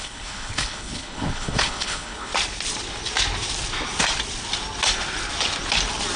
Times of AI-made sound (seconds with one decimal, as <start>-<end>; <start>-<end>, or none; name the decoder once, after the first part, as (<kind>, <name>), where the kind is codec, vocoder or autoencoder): 0.0-2.3 (codec, HILCodec)